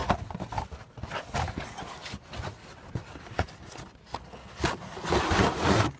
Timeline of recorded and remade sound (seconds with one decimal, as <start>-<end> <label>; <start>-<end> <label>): 0.0-6.0 recorded